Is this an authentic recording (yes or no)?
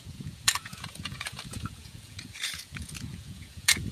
no